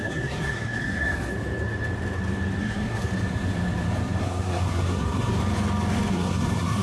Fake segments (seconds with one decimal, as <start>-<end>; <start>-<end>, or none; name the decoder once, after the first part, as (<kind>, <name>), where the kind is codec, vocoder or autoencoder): 0.0-1.3 (codec, SNAC); 2.6-3.1; 4.2-5.4; 6.1-6.8